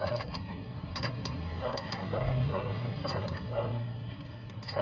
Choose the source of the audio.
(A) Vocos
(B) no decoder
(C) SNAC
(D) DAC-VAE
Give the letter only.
C